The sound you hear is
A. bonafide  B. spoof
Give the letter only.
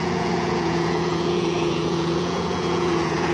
B